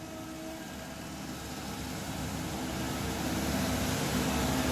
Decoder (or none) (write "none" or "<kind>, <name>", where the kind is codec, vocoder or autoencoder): none